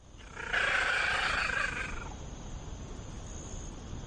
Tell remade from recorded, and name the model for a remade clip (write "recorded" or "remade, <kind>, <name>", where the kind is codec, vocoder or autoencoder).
recorded